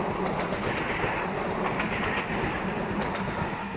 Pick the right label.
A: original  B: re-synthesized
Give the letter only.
A